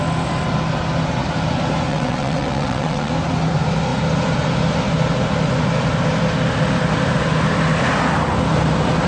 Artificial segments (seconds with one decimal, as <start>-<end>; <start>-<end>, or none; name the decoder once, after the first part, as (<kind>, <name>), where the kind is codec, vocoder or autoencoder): 1.9-3.1 (vocoder, WaveNeXt)